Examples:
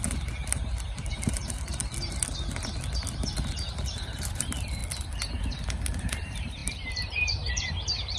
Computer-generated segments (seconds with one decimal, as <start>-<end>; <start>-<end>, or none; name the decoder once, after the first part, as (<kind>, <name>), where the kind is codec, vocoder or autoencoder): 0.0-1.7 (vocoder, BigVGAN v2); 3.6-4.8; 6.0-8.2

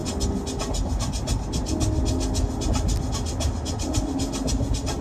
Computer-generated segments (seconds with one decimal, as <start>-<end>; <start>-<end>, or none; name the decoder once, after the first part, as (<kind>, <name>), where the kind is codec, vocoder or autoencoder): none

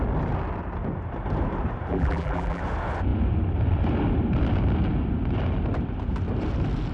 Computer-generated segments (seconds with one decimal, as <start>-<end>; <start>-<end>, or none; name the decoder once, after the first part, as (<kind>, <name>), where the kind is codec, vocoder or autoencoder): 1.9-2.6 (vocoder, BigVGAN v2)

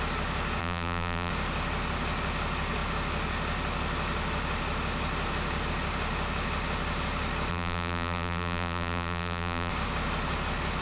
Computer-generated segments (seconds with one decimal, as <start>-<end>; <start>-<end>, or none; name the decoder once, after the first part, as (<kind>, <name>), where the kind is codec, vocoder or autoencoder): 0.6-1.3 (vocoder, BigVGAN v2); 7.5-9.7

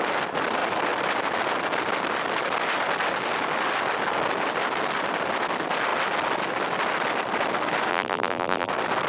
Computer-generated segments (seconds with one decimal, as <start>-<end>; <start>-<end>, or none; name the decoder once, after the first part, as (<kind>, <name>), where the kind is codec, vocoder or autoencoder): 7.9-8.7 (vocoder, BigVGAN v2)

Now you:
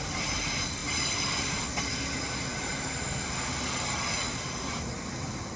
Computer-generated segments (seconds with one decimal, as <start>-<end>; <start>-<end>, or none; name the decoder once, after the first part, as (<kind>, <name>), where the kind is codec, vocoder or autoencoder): none

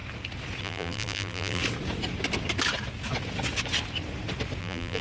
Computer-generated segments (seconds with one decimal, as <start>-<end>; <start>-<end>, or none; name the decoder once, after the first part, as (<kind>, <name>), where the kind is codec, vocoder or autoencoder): 0.6-1.6 (vocoder, BigVGAN v2); 4.6-5.0

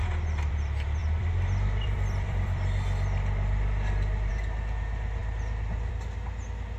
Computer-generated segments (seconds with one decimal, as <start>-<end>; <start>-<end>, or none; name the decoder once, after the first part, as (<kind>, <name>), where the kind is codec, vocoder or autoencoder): 0.0-0.5 (vocoder, BigVGAN v2); 1.0-4.3; 5.2-5.9